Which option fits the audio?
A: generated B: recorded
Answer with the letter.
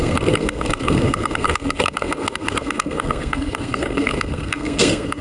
A